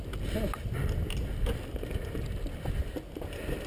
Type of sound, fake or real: real